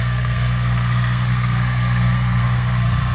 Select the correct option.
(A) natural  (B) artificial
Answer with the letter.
B